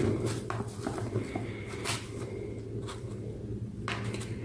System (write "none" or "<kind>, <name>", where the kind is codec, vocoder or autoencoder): none